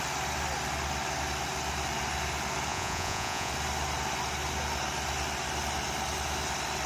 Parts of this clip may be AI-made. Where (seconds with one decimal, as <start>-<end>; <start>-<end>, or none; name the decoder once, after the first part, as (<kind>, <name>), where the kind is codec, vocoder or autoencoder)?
2.7-3.5 (vocoder, Vocos)